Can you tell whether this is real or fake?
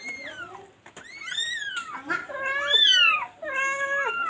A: real